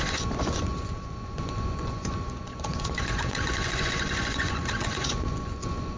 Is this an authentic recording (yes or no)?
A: no